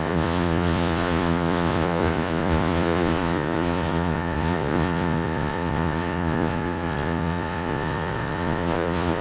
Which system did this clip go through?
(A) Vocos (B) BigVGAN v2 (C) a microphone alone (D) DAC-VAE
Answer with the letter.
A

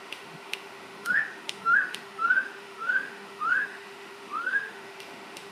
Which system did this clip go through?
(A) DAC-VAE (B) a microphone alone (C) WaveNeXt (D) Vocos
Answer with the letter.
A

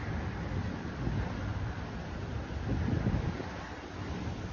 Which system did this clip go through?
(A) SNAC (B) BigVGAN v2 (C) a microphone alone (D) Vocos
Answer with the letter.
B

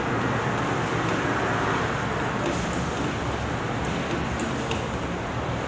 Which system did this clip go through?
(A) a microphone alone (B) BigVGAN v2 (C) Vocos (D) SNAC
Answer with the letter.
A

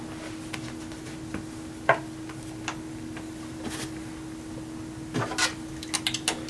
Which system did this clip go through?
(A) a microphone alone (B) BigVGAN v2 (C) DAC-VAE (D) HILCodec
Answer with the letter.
A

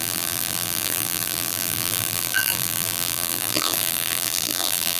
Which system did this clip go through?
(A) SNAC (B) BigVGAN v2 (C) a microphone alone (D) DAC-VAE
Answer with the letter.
B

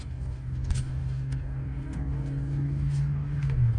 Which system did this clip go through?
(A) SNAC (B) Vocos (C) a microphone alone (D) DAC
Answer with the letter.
D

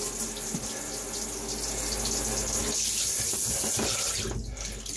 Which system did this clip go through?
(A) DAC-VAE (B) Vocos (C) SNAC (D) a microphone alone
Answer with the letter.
D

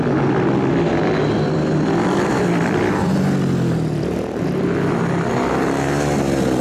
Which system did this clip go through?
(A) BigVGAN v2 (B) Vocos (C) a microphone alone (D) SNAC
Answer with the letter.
C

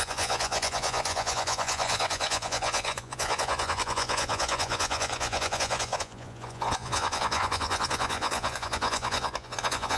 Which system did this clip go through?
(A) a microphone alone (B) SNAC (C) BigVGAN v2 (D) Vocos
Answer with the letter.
D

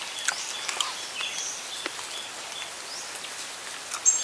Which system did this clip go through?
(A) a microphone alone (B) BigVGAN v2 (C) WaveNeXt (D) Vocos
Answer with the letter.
A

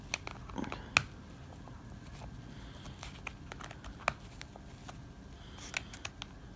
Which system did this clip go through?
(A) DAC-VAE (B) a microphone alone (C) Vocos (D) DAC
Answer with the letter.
B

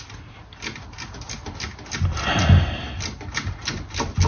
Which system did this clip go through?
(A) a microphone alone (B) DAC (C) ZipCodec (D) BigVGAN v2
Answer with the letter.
A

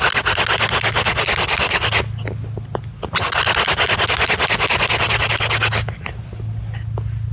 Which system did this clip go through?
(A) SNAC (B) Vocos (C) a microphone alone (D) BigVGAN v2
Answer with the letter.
C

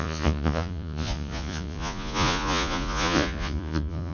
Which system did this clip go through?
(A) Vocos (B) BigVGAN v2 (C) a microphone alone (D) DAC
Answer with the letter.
A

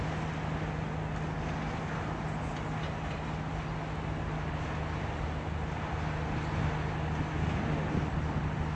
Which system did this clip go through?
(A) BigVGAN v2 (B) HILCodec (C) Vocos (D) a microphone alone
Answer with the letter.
D